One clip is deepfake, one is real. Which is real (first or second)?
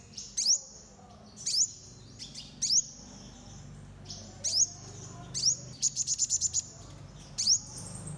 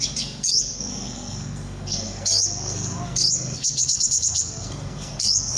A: first